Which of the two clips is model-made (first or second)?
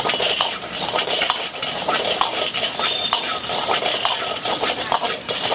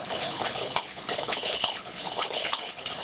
second